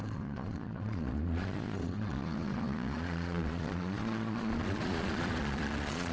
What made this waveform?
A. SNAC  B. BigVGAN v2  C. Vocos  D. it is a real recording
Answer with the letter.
C